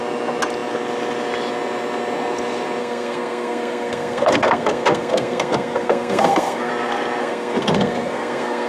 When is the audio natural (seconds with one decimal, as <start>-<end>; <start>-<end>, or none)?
0.0-2.8; 6.7-7.2